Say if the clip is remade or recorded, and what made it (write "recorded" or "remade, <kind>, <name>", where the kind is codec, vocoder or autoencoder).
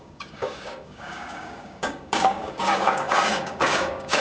remade, codec, DAC